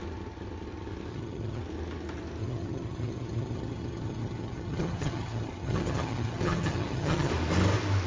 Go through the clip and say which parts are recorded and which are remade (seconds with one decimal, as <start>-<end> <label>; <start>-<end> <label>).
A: 0.0-1.1 recorded; 1.1-1.6 remade; 1.6-2.4 recorded; 2.4-7.3 remade; 7.3-8.1 recorded